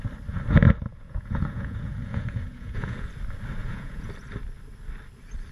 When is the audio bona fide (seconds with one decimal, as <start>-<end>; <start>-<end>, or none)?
0.0-0.9; 3.1-3.6; 4.1-5.5